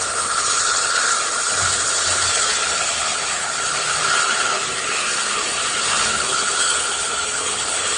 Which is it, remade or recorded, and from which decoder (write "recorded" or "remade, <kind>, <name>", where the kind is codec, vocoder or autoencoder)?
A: remade, codec, HILCodec